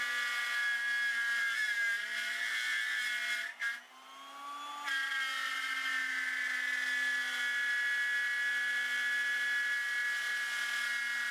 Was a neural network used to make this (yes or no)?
no